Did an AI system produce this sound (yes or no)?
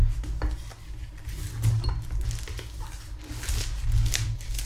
no